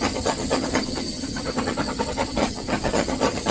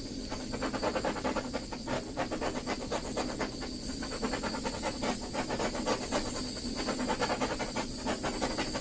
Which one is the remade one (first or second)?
first